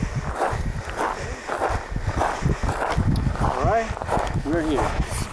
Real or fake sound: real